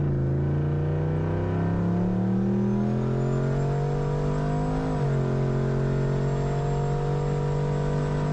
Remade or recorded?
recorded